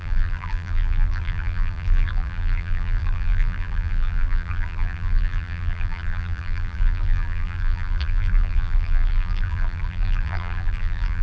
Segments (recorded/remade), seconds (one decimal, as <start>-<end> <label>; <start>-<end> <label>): 0.0-11.2 remade